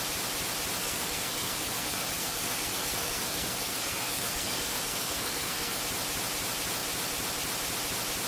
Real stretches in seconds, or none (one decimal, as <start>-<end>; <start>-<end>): 0.0-0.8; 5.8-8.3